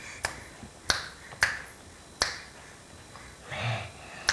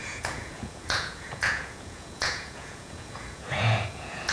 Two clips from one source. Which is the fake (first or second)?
second